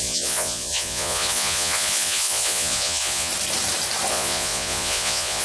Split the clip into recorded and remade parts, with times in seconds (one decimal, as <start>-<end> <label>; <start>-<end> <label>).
0.0-3.3 remade; 3.3-4.1 recorded; 4.1-5.4 remade